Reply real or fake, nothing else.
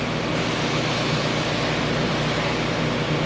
real